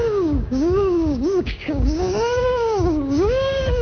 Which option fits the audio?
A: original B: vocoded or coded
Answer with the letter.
B